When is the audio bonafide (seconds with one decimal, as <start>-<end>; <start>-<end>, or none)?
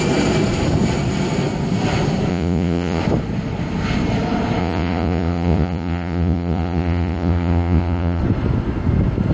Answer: 0.0-2.3; 3.0-4.6; 8.2-9.3